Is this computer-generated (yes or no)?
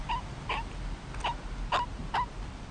no